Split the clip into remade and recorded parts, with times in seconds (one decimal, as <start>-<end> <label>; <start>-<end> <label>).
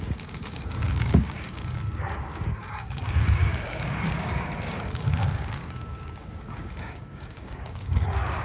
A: 0.0-8.4 remade